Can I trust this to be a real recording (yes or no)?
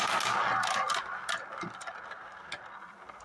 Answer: yes